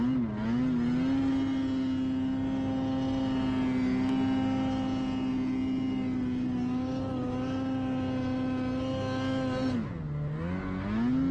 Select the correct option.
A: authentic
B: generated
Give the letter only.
A